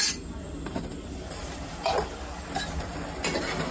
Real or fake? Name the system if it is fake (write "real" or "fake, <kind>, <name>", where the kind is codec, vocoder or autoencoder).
real